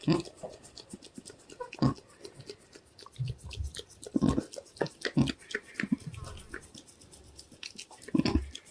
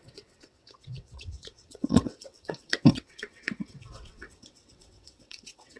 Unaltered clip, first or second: first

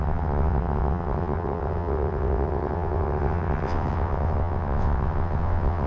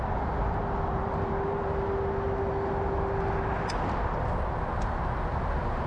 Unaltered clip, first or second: second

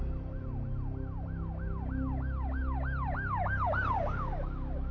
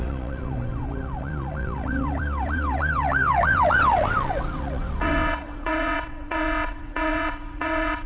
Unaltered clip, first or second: first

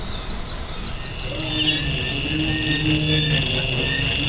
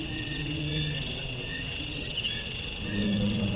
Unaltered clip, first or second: first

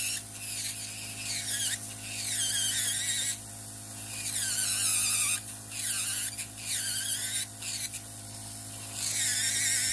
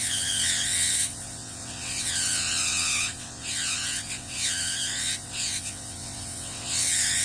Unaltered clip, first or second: first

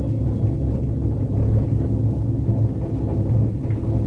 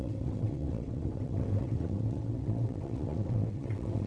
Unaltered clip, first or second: first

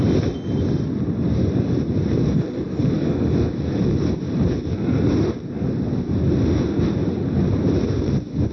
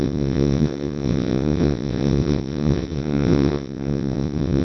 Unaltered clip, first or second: first